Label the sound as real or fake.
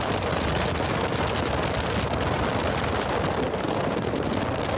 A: real